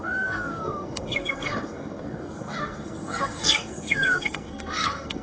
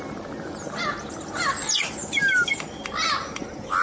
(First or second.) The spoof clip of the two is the first